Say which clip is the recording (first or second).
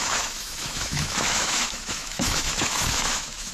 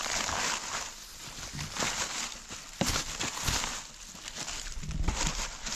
second